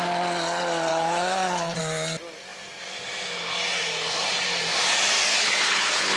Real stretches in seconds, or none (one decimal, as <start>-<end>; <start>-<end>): 0.0-0.9; 1.8-5.3